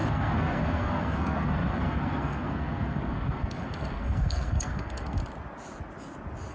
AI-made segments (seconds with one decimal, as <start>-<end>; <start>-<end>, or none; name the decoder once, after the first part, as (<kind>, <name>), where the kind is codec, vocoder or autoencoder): 0.0-5.2 (codec, SNAC)